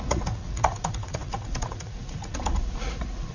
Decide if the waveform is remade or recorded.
remade